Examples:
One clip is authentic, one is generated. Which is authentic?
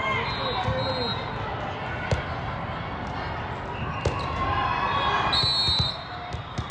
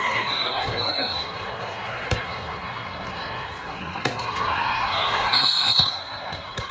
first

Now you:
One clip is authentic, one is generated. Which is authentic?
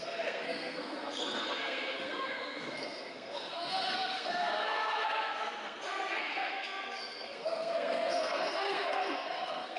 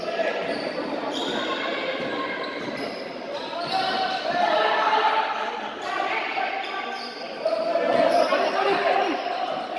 second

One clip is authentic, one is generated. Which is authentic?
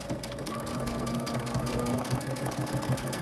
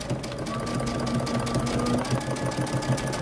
second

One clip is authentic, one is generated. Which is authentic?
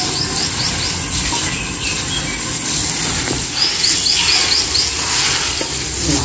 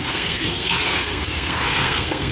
first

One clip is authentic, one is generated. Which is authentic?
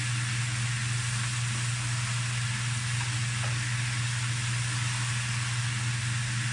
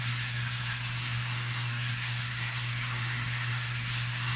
first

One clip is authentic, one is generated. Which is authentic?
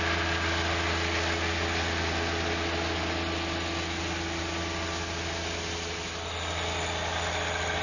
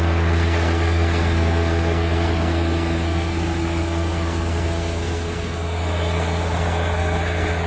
first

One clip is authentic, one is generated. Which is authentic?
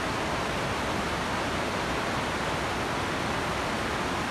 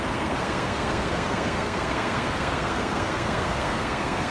first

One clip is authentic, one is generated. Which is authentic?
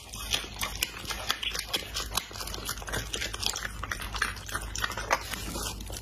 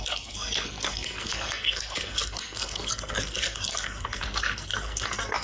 first